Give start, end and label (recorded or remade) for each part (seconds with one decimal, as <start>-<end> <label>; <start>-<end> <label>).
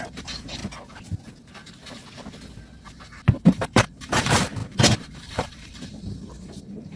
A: 0.0-0.6 remade; 0.6-3.4 recorded; 3.4-7.0 remade